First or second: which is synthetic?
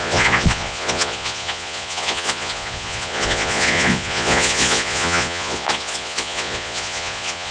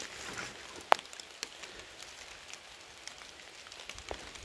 first